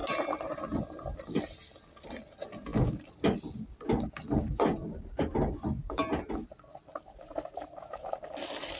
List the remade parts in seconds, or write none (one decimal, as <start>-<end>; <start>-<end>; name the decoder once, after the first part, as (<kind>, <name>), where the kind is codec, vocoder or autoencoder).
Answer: 0.0-0.6 (vocoder, BigVGAN v2); 5.8-6.3; 6.8-8.1